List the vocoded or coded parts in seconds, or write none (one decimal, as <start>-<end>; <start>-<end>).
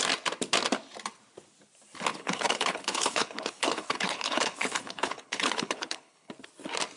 2.1-6.3